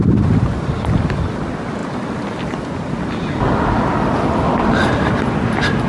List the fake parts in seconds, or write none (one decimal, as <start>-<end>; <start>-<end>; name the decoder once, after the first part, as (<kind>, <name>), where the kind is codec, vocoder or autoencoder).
none